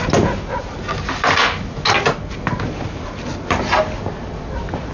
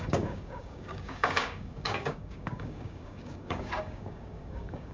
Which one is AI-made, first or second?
second